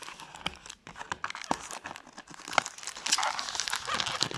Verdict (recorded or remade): recorded